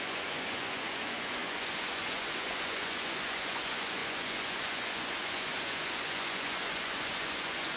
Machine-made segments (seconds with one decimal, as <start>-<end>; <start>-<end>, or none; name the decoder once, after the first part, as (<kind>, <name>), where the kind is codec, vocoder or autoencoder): 0.0-7.8 (vocoder, Vocos)